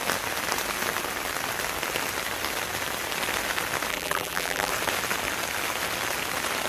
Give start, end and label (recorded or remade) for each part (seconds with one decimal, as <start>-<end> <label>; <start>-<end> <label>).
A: 0.0-3.9 recorded; 3.9-4.7 remade; 4.7-6.7 recorded